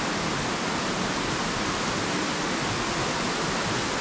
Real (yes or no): yes